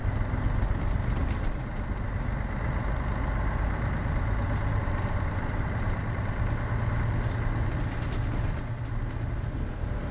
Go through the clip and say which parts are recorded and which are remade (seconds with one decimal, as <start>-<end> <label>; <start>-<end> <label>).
0.0-10.1 recorded